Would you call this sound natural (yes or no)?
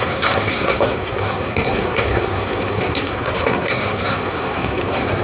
no